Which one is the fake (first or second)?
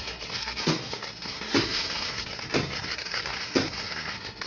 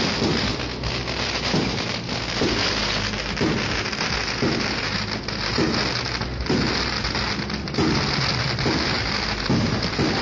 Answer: first